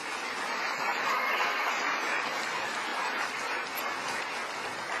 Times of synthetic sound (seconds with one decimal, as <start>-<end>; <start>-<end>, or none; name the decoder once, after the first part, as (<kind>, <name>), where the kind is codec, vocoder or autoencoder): 1.1-1.7 (codec, SNAC)